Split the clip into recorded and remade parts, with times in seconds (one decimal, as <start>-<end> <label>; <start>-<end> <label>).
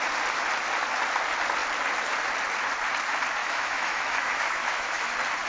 0.0-3.4 recorded; 3.4-5.1 remade; 5.1-5.5 recorded